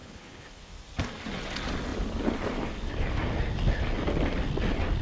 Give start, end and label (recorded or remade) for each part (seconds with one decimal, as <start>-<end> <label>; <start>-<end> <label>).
0.0-0.7 remade; 0.7-5.0 recorded

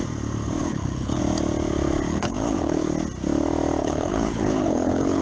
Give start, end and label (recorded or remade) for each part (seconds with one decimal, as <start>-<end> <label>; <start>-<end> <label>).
0.0-0.6 recorded; 0.6-1.2 remade; 1.2-2.1 recorded; 2.1-2.9 remade; 2.9-3.8 recorded; 3.8-5.2 remade

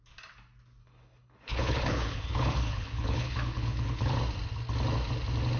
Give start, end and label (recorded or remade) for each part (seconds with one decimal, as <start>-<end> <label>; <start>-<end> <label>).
0.0-0.8 recorded; 0.8-4.2 remade; 4.2-5.6 recorded

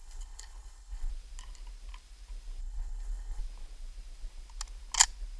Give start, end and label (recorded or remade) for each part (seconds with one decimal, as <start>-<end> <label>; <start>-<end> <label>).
0.0-1.1 remade; 1.1-2.6 recorded; 2.6-3.4 remade; 3.4-5.4 recorded

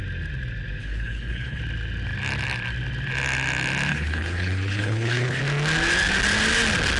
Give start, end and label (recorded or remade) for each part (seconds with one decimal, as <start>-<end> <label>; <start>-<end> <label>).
0.0-0.8 recorded; 0.8-1.6 remade; 1.6-3.9 recorded; 3.9-5.4 remade; 5.4-7.0 recorded

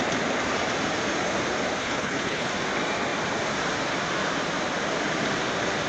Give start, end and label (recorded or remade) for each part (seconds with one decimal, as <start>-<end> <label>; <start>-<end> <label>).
0.0-1.8 recorded; 1.8-2.5 remade; 2.5-5.9 recorded

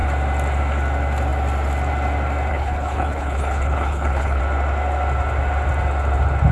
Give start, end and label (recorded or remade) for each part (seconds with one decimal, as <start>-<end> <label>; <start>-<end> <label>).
0.0-2.5 recorded; 2.5-4.4 remade; 4.4-6.5 recorded

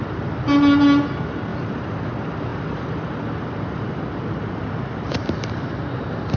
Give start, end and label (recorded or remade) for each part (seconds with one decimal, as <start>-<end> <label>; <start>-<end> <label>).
0.0-6.4 recorded